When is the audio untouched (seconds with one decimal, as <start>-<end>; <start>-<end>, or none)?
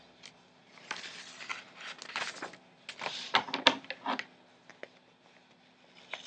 0.0-6.3